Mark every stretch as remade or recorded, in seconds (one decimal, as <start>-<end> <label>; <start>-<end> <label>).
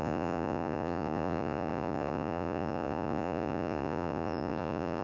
0.0-5.0 remade